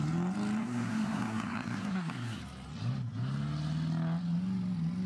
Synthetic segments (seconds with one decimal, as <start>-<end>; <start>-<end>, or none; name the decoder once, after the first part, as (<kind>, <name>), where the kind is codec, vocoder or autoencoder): 0.6-2.4 (codec, SNAC)